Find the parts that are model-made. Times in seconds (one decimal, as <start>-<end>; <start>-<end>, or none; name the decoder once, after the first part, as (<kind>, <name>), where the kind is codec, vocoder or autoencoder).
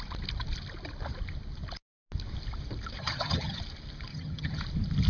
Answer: 3.0-3.6 (vocoder, HiFi-GAN); 4.1-4.6